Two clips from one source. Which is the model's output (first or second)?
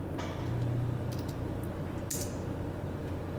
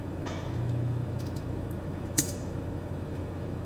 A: second